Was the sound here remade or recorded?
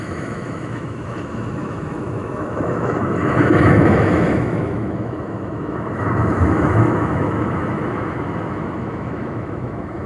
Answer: remade